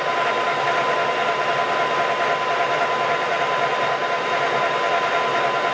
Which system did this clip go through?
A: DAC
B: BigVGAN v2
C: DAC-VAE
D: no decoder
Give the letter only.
D